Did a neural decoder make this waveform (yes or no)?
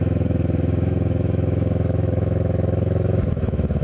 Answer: yes